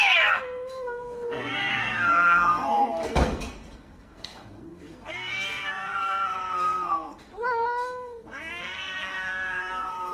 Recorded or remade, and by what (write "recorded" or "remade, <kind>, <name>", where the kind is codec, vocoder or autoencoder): remade, codec, SNAC